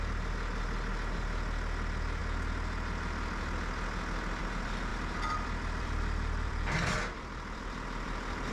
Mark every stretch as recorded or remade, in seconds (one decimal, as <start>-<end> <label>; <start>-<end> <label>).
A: 0.0-4.9 recorded; 4.9-8.5 remade